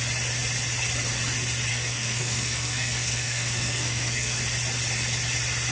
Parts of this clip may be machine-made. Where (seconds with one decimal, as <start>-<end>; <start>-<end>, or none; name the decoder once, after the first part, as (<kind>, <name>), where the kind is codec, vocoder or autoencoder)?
1.7-4.4 (codec, SNAC)